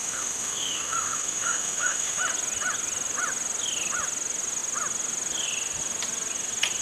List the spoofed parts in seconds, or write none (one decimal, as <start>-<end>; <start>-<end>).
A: 0.0-2.2